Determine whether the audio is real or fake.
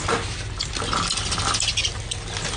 real